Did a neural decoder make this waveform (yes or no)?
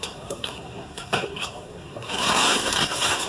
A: yes